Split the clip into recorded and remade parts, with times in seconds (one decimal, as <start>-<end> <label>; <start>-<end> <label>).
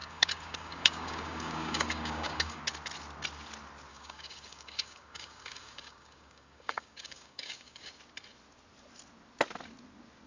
0.0-2.6 remade; 2.6-3.9 recorded; 3.9-7.9 remade; 7.9-10.3 recorded